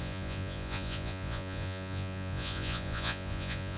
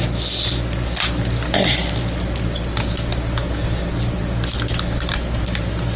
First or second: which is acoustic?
second